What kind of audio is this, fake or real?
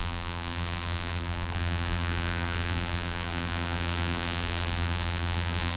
fake